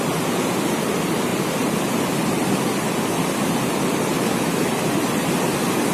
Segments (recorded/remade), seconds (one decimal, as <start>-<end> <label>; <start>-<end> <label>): 0.0-5.9 recorded